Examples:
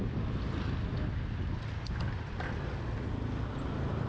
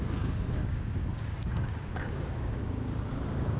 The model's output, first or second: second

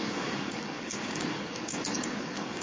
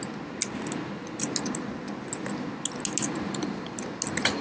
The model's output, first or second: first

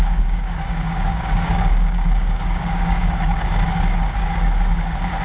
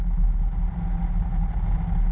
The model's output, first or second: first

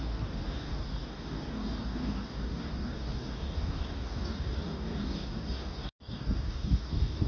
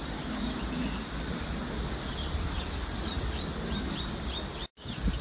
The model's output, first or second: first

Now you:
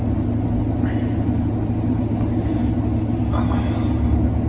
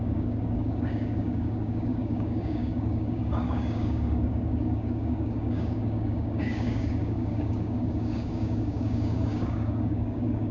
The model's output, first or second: second